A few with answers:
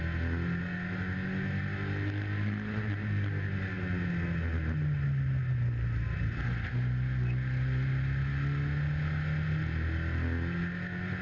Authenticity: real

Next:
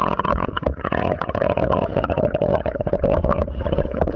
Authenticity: fake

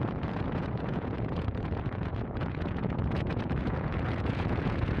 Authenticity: fake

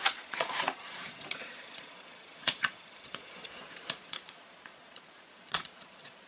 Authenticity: fake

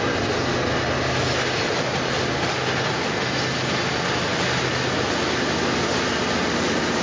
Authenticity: real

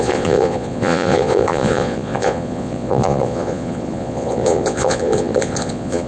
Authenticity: fake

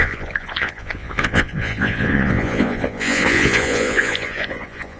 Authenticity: fake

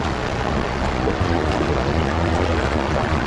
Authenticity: fake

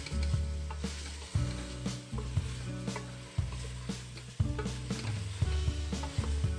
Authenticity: real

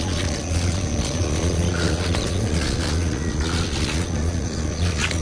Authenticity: fake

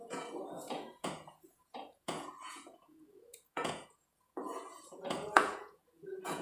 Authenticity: fake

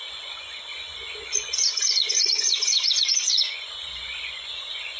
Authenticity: fake